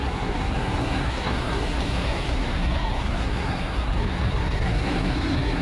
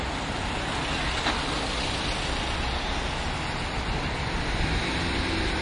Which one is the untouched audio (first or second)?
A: second